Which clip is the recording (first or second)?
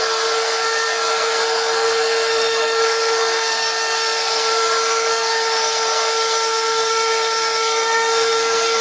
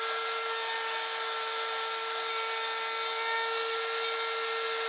second